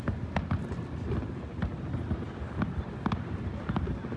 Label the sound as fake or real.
real